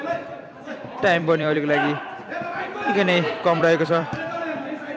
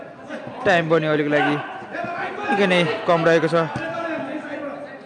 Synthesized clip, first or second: first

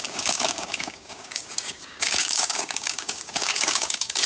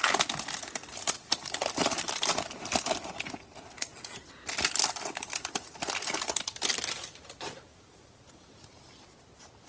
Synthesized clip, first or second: first